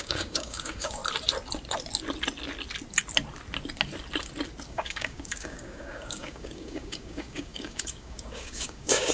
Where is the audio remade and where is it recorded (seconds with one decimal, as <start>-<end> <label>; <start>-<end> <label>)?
0.0-1.0 remade; 1.0-4.7 recorded; 4.7-9.1 remade